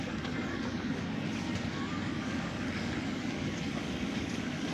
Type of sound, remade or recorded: remade